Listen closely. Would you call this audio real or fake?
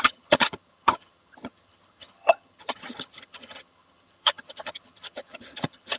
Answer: fake